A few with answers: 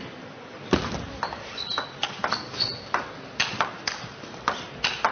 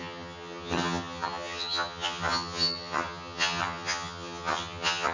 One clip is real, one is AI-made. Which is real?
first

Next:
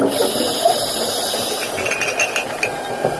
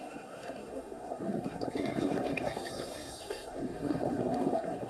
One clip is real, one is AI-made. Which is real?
first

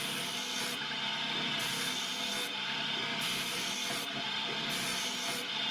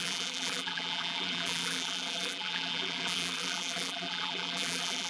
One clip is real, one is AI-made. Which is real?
first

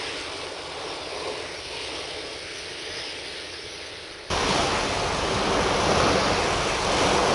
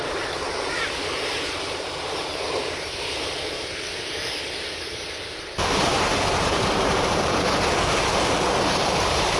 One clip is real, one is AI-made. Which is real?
first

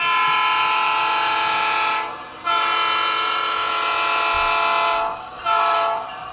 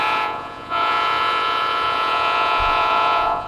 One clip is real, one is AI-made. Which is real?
first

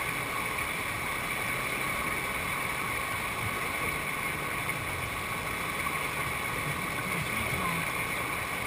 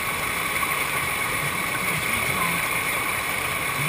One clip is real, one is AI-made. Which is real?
first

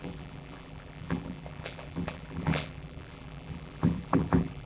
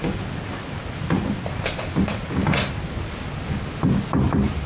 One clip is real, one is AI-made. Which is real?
second